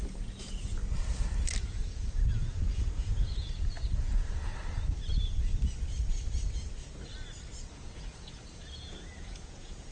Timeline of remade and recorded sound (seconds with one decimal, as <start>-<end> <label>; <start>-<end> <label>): 0.0-0.8 remade; 0.8-1.6 recorded; 1.6-4.5 remade; 4.5-7.7 recorded; 7.7-9.9 remade